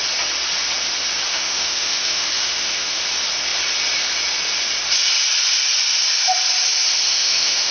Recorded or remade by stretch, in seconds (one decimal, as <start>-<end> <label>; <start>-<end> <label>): 0.0-1.3 recorded; 1.3-3.0 remade; 3.0-7.1 recorded; 7.1-7.7 remade